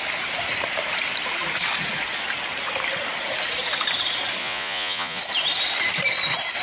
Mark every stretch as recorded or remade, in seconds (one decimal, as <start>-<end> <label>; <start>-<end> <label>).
0.0-4.4 recorded; 4.4-5.2 remade; 5.2-6.6 recorded